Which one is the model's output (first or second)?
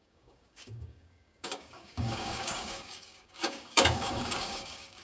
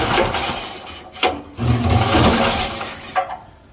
first